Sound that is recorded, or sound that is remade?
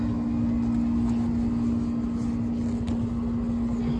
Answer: recorded